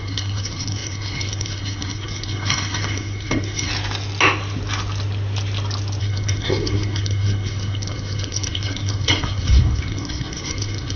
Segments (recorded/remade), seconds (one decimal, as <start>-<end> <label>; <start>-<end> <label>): 0.0-3.7 remade; 3.7-6.0 recorded; 6.0-11.0 remade